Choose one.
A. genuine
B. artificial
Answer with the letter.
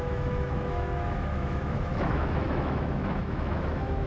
B